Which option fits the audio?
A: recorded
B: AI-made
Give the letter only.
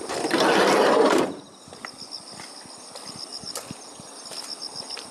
A